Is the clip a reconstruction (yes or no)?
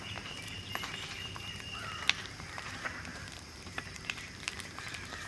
yes